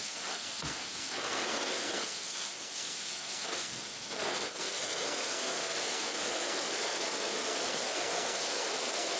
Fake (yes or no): yes